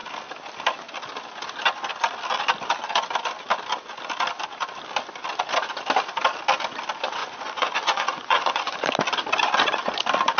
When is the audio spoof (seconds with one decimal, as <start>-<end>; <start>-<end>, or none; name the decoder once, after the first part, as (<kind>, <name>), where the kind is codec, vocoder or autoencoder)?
7.2-8.8 (vocoder, Vocos)